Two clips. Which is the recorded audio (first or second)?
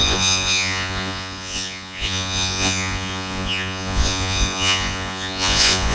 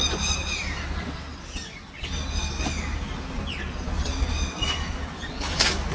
second